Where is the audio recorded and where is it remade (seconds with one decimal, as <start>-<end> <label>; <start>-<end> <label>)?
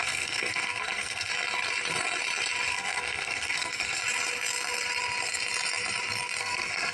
0.0-1.3 remade; 1.3-2.7 recorded; 2.7-4.0 remade; 4.0-6.4 recorded; 6.4-6.9 remade